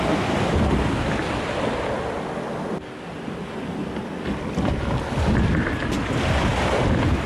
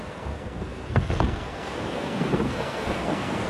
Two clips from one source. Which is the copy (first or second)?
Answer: second